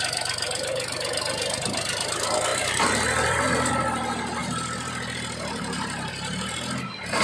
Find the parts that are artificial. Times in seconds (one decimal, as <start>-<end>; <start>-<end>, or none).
2.5-3.7; 4.4-6.1